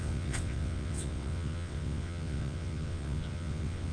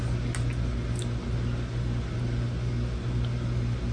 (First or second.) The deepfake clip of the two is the first